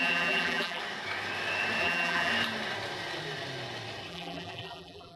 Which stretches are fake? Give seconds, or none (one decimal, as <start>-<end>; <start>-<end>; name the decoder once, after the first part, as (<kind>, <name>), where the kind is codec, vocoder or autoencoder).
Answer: 0.0-0.8 (vocoder, BigVGAN v2); 1.8-2.3; 4.1-5.2